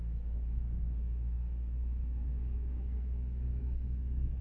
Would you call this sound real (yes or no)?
no